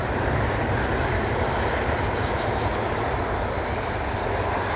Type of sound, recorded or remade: recorded